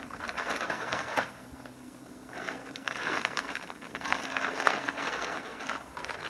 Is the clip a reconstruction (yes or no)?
yes